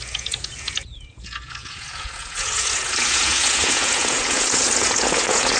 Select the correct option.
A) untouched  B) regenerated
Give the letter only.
B